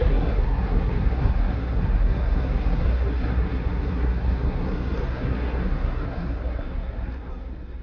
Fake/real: fake